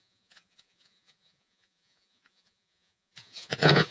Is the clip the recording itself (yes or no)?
no